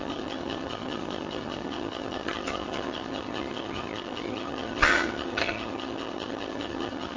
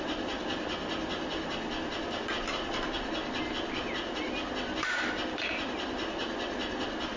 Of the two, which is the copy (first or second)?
first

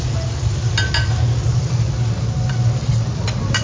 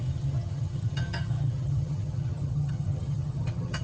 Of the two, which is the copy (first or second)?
second